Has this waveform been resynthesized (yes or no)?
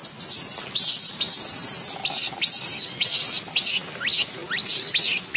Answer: no